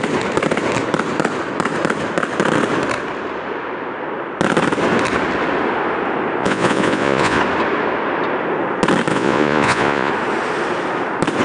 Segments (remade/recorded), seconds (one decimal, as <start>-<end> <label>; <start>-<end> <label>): 0.0-6.4 recorded; 6.4-7.4 remade; 7.4-9.1 recorded; 9.1-10.1 remade; 10.1-11.4 recorded

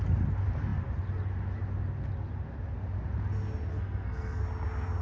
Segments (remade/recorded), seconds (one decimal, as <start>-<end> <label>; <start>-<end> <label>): 0.0-3.7 recorded; 3.7-4.4 remade; 4.4-5.0 recorded

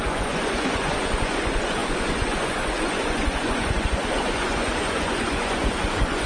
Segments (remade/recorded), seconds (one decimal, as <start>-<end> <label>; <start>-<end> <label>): 0.0-6.3 remade

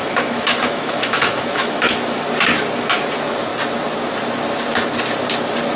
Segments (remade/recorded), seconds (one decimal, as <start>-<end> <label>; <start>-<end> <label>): 0.0-2.2 remade; 2.2-5.8 recorded

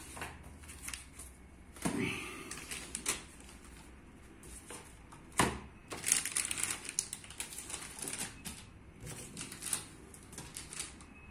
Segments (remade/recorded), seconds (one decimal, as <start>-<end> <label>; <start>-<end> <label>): 0.0-11.3 recorded

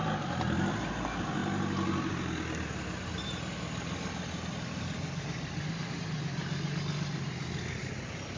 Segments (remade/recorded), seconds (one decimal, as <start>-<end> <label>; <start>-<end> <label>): 0.0-8.4 recorded